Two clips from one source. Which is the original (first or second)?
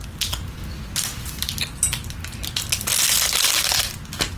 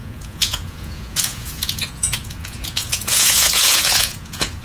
first